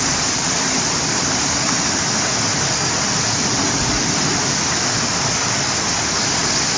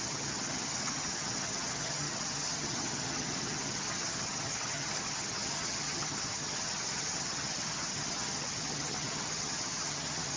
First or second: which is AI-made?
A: second